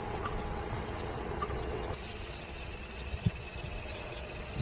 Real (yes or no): no